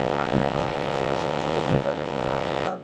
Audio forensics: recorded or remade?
remade